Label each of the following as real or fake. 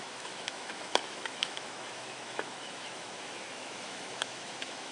fake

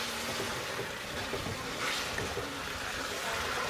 real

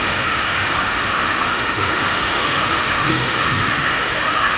fake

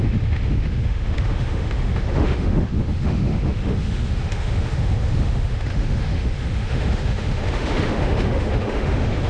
fake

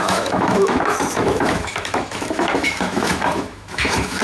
fake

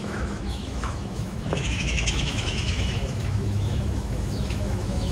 fake